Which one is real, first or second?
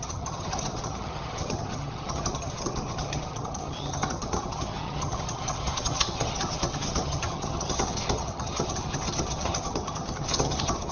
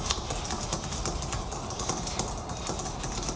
second